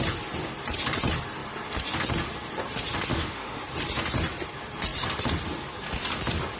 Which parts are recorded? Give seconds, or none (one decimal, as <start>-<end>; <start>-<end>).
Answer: 0.0-3.1; 3.6-6.6